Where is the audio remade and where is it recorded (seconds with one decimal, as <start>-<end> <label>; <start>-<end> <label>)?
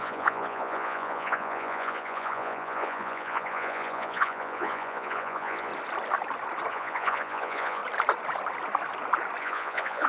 0.0-5.7 remade; 5.7-6.7 recorded; 6.7-7.8 remade; 7.8-9.4 recorded; 9.4-10.1 remade